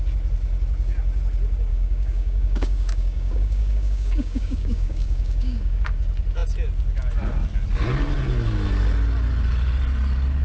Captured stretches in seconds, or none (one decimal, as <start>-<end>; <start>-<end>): 0.0-1.7; 5.8-10.4